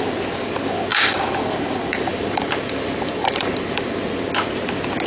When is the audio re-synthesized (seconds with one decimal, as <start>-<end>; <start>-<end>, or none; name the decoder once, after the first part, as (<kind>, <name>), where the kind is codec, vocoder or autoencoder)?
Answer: 0.9-4.0 (vocoder, BigVGAN v2)